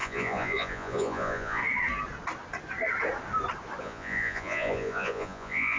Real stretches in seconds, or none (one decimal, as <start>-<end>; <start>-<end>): 1.6-3.8